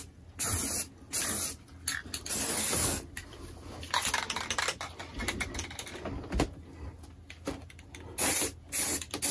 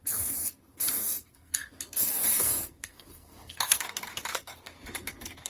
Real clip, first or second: first